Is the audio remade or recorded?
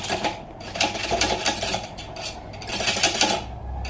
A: remade